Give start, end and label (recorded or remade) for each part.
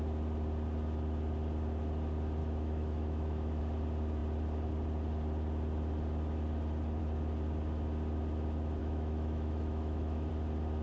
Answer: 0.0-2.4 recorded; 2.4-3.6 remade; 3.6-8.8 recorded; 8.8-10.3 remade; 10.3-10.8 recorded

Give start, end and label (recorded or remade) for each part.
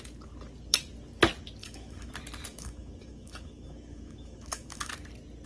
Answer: 0.0-1.6 recorded; 1.6-2.1 remade; 2.1-2.5 recorded; 2.5-4.9 remade; 4.9-5.5 recorded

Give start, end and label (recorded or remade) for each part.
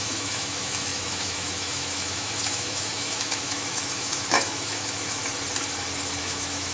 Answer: 0.0-5.2 remade; 5.2-6.2 recorded; 6.2-6.7 remade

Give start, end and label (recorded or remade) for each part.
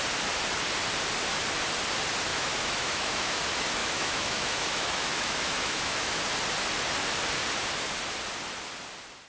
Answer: 0.0-2.3 recorded; 2.3-3.4 remade; 3.4-3.8 recorded; 3.8-6.2 remade; 6.2-9.3 recorded